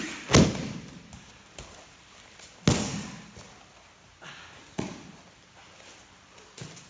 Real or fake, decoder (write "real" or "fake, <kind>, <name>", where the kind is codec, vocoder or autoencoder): real